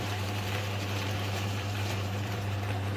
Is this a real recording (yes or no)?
no